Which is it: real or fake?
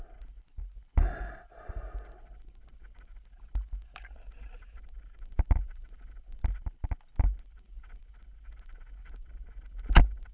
real